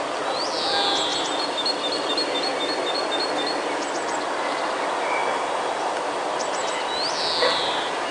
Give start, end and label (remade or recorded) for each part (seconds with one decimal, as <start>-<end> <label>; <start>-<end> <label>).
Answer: 0.0-8.1 recorded